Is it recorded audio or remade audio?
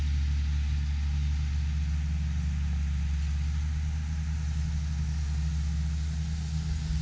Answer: recorded